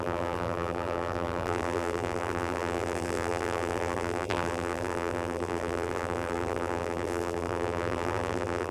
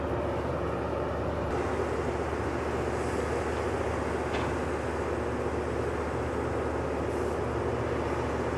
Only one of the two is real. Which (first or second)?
second